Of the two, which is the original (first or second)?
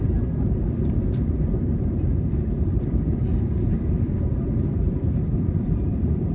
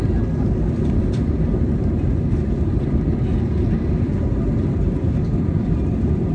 second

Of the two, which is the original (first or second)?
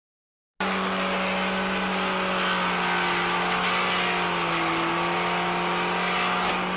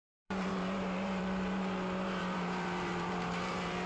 first